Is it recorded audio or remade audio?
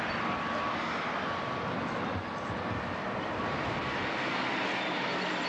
recorded